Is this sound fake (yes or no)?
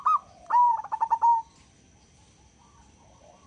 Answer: no